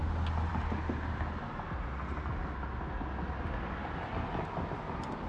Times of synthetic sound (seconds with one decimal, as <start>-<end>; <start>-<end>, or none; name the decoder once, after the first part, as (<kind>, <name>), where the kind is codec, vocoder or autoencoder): none